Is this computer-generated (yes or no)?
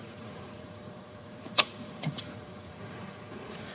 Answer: yes